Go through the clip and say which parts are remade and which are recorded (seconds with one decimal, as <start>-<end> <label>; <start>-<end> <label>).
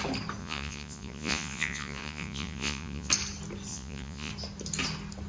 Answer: 0.0-0.4 recorded; 0.4-3.1 remade; 3.1-3.7 recorded; 3.7-4.3 remade; 4.3-5.3 recorded